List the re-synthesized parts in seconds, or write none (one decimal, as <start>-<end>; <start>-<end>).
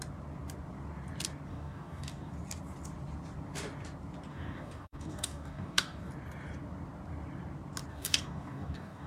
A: 1.5-2.3; 4.3-6.1; 7.9-9.1